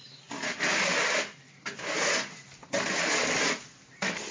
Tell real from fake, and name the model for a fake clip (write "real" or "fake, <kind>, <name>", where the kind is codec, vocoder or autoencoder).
real